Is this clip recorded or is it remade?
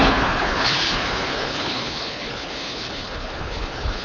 remade